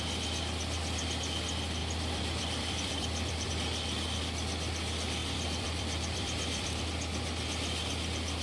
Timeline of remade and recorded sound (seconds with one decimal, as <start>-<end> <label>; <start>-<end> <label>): 0.0-1.8 recorded; 1.8-3.5 remade; 3.5-5.2 recorded; 5.2-6.8 remade; 6.8-8.4 recorded